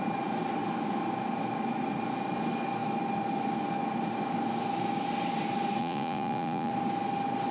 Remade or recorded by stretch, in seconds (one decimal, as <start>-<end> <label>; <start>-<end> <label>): 0.0-5.8 recorded; 5.8-6.7 remade; 6.7-7.5 recorded